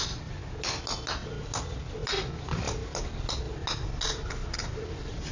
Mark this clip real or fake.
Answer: real